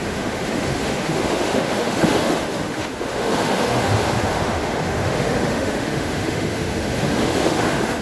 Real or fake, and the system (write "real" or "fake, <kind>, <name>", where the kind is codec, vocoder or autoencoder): fake, autoencoder, DAC-VAE